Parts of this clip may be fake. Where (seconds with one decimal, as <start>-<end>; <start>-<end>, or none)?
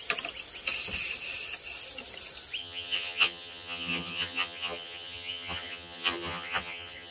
2.6-7.1